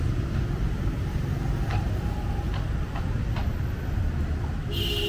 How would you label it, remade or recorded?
recorded